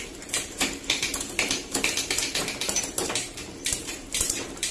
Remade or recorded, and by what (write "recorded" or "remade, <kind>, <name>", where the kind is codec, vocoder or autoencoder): remade, vocoder, BigVGAN v2